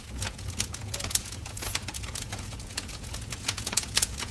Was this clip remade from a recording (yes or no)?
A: yes